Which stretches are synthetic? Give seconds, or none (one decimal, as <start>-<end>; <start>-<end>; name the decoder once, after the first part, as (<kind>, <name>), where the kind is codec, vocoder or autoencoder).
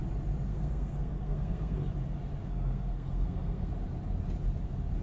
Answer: 0.5-1.9 (codec, SNAC); 2.4-3.7